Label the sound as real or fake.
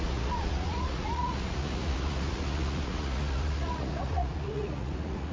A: fake